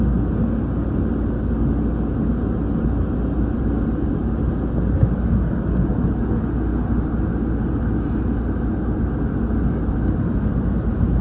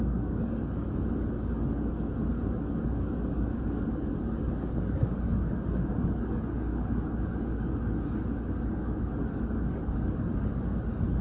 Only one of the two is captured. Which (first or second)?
first